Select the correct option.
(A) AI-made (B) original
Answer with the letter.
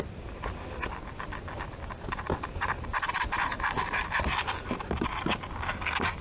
B